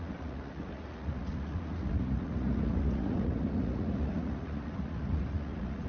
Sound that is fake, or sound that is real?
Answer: fake